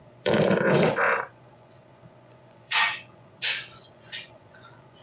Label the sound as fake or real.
fake